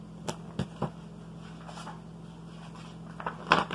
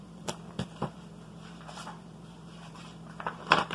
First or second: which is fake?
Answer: second